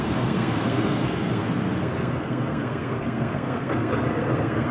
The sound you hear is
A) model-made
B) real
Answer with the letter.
A